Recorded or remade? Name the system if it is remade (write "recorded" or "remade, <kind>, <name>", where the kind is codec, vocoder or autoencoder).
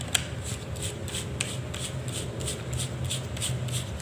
recorded